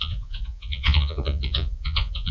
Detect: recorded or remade remade